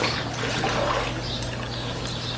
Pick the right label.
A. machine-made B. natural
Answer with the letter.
B